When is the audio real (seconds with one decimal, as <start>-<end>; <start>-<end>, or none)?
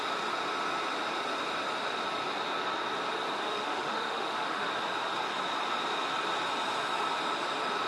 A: 0.0-3.4; 4.7-7.9